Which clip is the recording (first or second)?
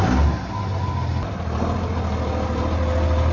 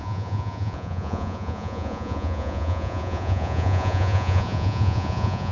first